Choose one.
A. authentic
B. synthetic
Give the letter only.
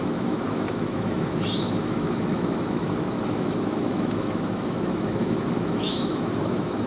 B